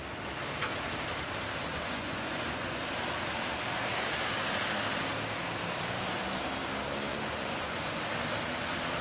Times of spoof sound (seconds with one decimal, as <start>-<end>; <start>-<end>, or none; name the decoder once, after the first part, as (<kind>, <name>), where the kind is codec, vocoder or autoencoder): 1.6-2.8 (vocoder, Vocos); 7.1-8.0